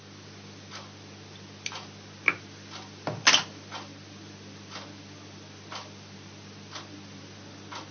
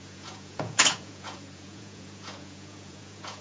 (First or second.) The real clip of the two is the first